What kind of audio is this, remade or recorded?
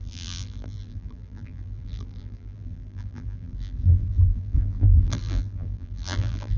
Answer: remade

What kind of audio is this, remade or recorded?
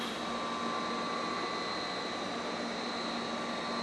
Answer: remade